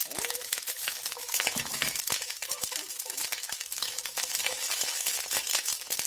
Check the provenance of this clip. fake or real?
fake